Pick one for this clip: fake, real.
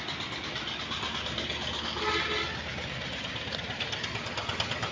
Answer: real